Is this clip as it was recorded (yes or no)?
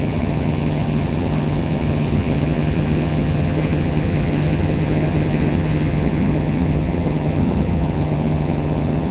no